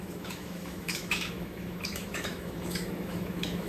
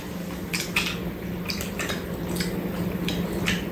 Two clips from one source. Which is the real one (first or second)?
second